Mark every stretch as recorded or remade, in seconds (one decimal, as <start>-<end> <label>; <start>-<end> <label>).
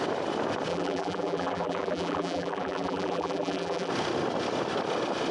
0.0-0.7 recorded; 0.7-3.9 remade; 3.9-5.3 recorded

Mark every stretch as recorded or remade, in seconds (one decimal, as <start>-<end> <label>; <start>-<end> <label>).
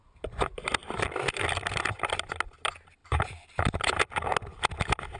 0.0-0.8 recorded; 0.8-2.3 remade; 2.3-3.0 recorded; 3.0-3.5 remade; 3.5-5.2 recorded